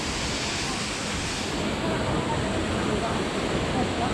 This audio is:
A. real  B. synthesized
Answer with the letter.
A